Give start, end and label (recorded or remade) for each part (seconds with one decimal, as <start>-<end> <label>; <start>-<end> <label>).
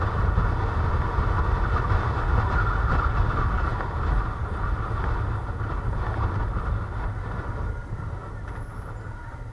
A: 0.0-9.5 recorded